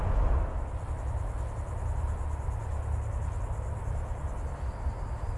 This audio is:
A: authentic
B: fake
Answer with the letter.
A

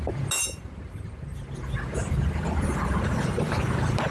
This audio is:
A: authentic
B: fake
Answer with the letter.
A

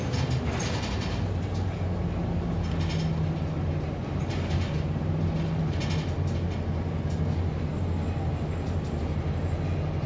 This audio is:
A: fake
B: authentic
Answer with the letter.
B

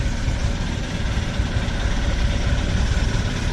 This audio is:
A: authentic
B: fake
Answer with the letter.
A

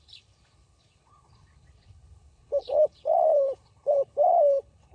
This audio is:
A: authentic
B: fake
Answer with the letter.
B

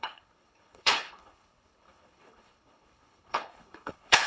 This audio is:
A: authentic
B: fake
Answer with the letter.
B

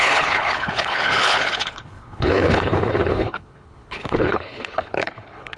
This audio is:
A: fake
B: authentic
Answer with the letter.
A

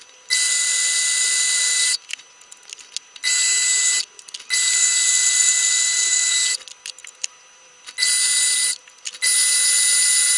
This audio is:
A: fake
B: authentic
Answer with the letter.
B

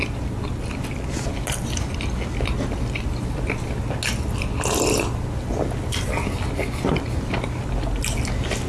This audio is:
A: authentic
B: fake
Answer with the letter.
A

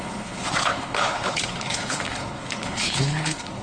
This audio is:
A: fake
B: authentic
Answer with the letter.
A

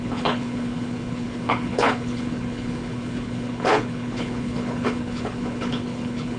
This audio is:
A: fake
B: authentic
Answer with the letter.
A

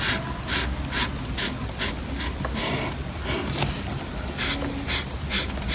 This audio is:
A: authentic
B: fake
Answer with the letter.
A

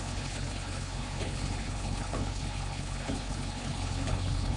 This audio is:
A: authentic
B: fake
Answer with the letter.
B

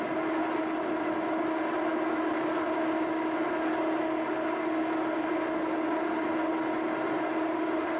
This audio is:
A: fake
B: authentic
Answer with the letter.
B